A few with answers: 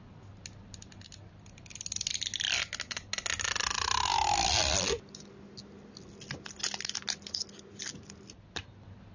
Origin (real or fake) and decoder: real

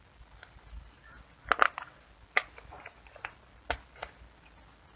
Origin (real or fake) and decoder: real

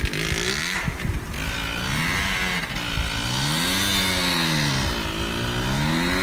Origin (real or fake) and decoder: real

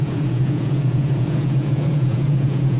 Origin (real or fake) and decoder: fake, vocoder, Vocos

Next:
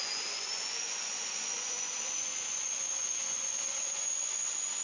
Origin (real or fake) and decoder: fake, vocoder, Vocos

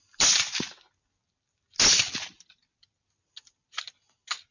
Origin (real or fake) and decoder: real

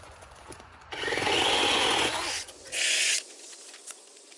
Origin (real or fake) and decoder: fake, vocoder, Vocos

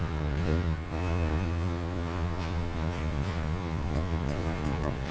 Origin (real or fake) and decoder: fake, vocoder, Vocos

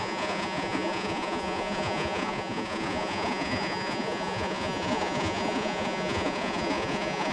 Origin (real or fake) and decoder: fake, vocoder, Vocos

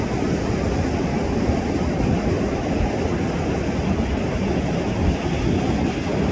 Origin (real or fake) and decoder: real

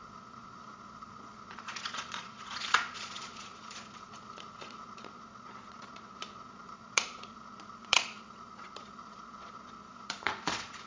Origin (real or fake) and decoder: fake, vocoder, Vocos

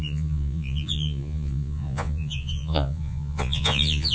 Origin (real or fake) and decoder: fake, vocoder, Vocos